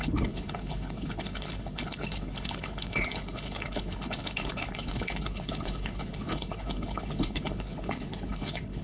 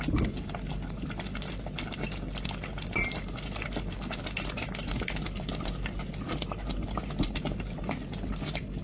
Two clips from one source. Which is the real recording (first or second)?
second